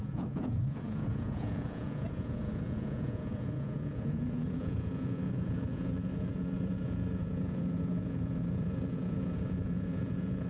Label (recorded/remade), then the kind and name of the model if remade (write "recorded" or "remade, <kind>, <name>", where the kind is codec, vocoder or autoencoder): remade, vocoder, Vocos